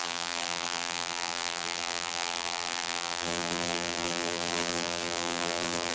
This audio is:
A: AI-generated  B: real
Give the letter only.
A